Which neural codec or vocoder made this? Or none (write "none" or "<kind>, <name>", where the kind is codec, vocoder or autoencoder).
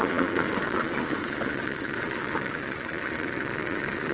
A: vocoder, Vocos